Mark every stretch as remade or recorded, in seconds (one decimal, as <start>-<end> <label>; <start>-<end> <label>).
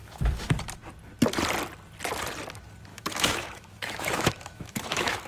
0.0-2.9 recorded; 2.9-5.3 remade